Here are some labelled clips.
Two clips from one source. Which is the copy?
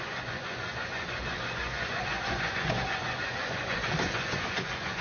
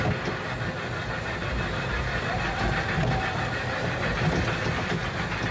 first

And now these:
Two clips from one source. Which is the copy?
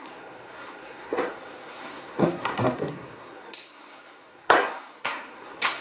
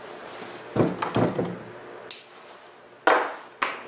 first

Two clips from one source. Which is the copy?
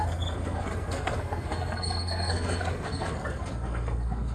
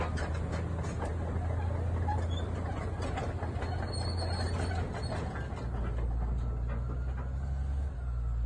first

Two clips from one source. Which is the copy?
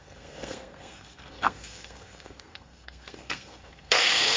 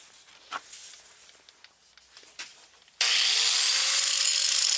first